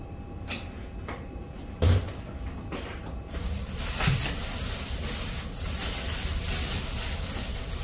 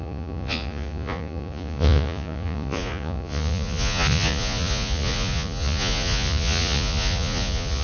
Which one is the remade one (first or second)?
second